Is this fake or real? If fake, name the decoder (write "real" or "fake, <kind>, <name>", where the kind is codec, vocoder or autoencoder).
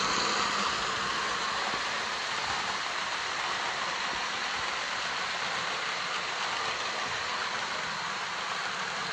real